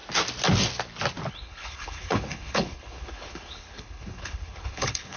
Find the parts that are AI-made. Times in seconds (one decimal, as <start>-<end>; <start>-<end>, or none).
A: 1.3-5.2